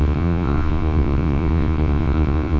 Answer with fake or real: fake